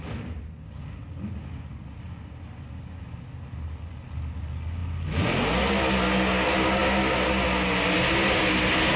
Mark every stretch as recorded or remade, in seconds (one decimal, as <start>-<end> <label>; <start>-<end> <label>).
0.0-9.0 recorded